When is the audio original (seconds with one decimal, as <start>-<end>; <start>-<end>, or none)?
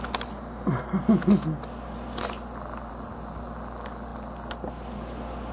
0.0-5.5